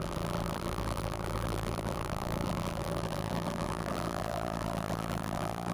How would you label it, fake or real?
fake